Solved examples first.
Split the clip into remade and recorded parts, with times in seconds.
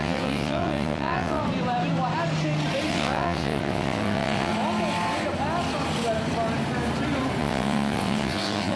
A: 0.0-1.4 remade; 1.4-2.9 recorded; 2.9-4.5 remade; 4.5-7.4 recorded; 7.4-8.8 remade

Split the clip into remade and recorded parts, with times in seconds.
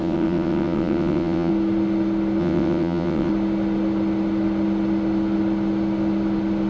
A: 0.0-1.5 remade; 1.5-2.4 recorded; 2.4-3.3 remade; 3.3-6.7 recorded